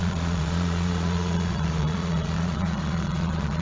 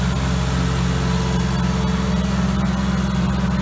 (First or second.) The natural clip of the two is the second